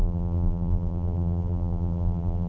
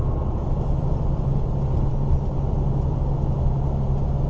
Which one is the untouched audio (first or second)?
second